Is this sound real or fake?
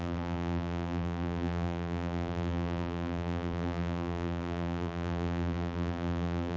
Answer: fake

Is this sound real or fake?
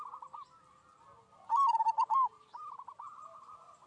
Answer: real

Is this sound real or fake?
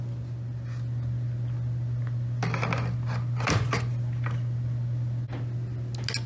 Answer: real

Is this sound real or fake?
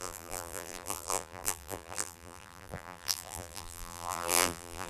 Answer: fake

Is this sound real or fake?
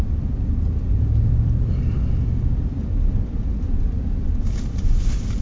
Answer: fake